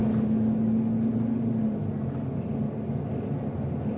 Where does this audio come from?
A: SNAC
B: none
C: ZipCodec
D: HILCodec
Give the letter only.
B